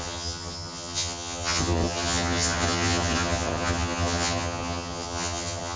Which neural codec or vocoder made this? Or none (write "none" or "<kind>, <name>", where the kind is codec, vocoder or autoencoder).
vocoder, HiFi-GAN